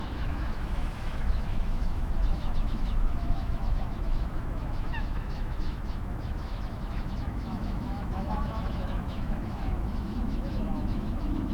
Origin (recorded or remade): remade